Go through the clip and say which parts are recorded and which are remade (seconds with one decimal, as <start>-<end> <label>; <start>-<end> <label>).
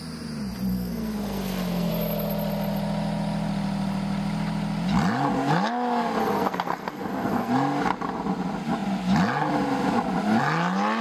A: 0.0-0.7 recorded; 0.7-1.9 remade; 1.9-6.2 recorded; 6.2-7.5 remade; 7.5-11.0 recorded